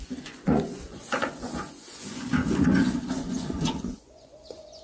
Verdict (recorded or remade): remade